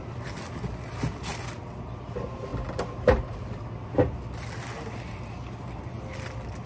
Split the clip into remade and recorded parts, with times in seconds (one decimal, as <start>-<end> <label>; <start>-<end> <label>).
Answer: 0.0-6.7 recorded